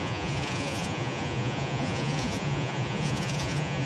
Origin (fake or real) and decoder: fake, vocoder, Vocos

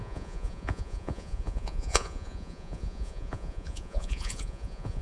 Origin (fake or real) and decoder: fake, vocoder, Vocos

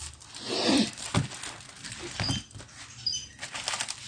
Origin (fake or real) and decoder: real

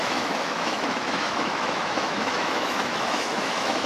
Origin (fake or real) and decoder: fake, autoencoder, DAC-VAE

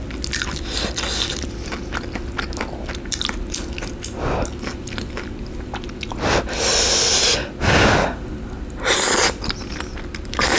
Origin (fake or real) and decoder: real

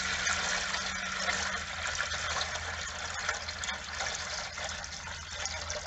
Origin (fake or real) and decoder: real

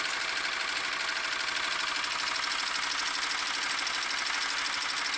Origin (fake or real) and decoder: real